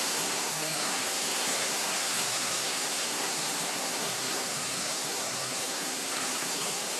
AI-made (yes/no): yes